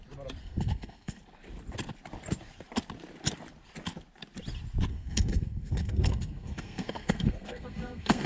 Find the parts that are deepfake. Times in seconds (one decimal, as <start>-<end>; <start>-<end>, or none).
0.4-1.2; 4.9-8.3